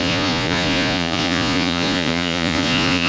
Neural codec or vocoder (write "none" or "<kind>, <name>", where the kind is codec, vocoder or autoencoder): vocoder, Vocos